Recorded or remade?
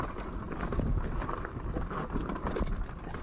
recorded